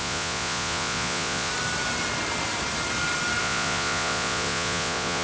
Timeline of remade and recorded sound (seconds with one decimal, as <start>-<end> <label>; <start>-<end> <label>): 0.0-1.5 remade; 1.5-3.4 recorded; 3.4-5.2 remade